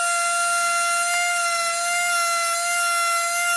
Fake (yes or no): no